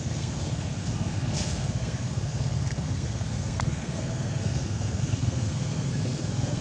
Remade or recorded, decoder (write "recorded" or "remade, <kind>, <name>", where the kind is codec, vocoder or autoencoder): remade, codec, SNAC